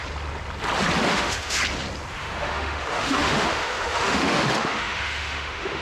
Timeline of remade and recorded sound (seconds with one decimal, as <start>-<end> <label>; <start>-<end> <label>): 0.0-1.1 recorded; 1.1-1.6 remade; 1.6-2.2 recorded; 2.2-5.8 remade